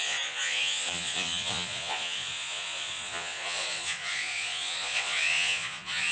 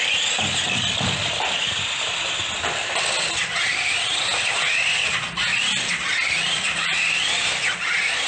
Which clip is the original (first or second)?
second